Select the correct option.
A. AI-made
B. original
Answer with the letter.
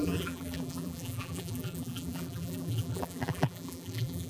A